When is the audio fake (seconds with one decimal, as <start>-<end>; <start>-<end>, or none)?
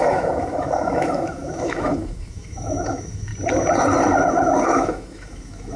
0.0-3.3; 4.6-5.8